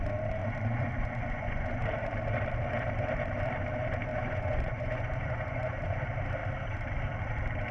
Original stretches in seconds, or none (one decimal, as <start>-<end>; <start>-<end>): 0.0-0.4; 1.8-4.1; 6.0-7.7